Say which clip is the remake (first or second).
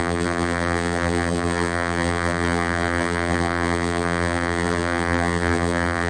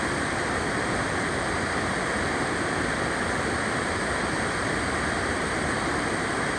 first